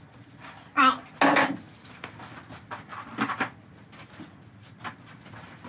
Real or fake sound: real